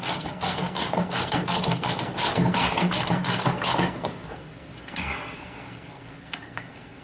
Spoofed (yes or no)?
yes